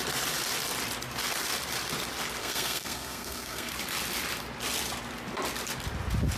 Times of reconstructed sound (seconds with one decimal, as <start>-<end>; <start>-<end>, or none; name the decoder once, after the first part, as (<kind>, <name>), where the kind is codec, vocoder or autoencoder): 2.4-3.7 (codec, SNAC)